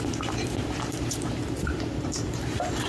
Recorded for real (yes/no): no